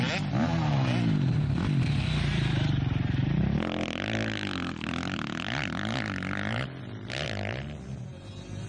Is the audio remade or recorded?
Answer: recorded